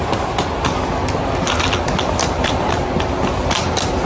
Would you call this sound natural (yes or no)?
yes